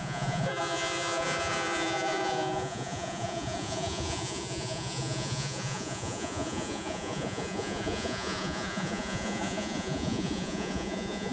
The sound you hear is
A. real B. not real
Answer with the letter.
B